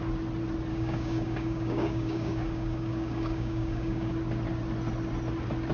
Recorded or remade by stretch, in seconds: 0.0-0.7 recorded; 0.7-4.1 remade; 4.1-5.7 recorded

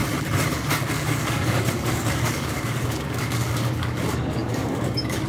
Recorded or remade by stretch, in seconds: 0.0-0.8 recorded; 0.8-5.3 remade

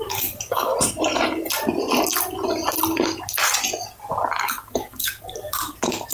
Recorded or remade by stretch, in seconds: 0.0-0.7 remade; 0.7-4.4 recorded; 4.4-6.1 remade

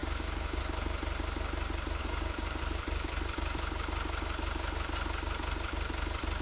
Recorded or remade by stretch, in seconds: 0.0-0.6 remade; 0.6-2.0 recorded; 2.0-2.6 remade; 2.6-6.4 recorded

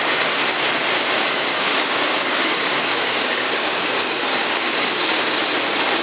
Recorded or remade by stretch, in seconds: 0.0-1.5 recorded; 1.5-5.1 remade; 5.1-6.0 recorded

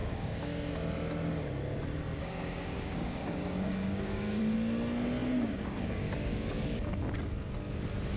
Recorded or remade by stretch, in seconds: 0.0-0.7 remade; 0.7-2.1 recorded; 2.1-4.4 remade; 4.4-5.2 recorded; 5.2-6.9 remade; 6.9-8.2 recorded